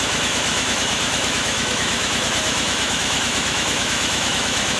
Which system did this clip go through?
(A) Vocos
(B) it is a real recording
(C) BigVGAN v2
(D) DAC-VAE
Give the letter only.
D